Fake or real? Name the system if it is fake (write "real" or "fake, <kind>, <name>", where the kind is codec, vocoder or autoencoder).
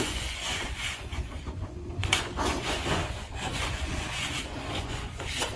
fake, vocoder, Vocos